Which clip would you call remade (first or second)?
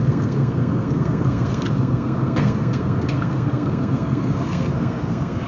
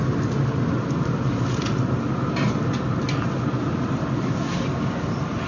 first